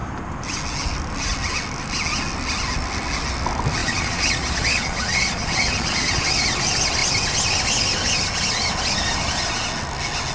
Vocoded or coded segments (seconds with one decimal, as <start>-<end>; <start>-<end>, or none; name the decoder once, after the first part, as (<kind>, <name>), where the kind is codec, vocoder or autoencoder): 3.8-6.3 (vocoder, Vocos)